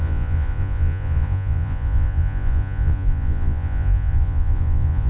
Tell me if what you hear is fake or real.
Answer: fake